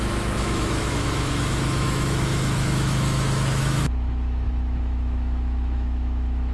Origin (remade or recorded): remade